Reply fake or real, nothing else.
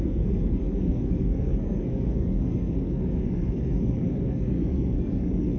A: fake